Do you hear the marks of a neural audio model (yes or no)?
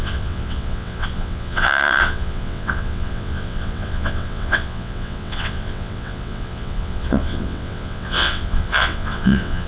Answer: yes